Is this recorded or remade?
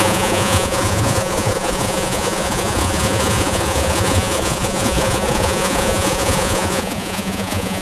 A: remade